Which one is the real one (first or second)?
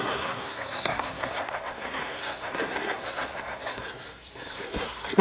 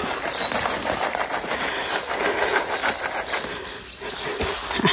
second